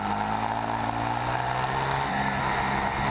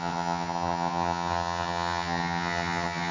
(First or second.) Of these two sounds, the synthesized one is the second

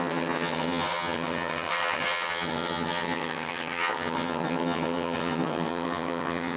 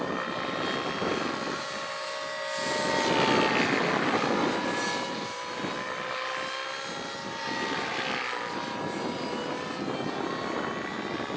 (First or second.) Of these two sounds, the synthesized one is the first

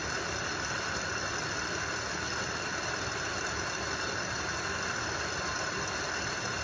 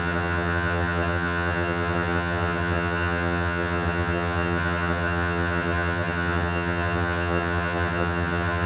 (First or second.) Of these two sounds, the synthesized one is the second